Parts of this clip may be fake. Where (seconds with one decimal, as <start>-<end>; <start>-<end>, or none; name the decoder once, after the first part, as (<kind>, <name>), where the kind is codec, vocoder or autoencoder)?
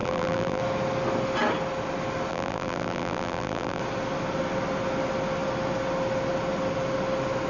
0.0-0.6 (vocoder, BigVGAN v2); 2.3-3.8